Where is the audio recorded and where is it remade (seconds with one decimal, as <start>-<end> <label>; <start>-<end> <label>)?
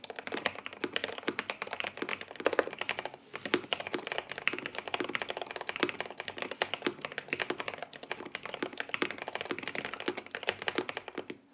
0.0-11.5 recorded